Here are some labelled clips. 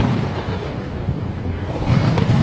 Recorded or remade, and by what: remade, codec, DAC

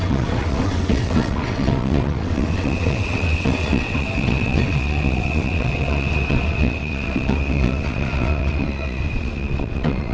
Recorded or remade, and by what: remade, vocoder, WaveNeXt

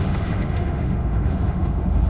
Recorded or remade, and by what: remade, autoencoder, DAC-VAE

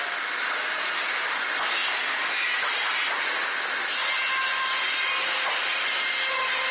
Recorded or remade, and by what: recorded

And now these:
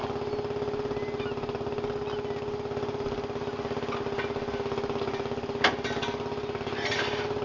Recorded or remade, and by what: recorded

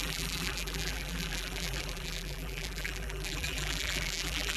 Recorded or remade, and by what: remade, vocoder, BigVGAN v2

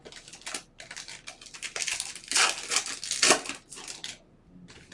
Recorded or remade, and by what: recorded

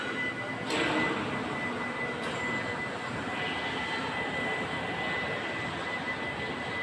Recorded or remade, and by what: recorded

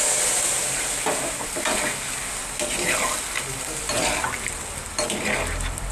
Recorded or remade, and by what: recorded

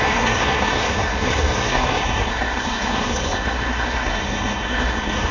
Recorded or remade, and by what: remade, codec, SNAC